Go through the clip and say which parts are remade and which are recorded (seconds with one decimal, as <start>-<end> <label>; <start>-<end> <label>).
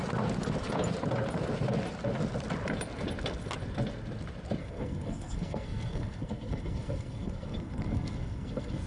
0.0-4.6 recorded; 4.6-8.9 remade